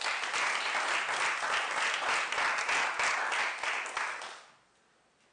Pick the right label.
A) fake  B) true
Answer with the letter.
B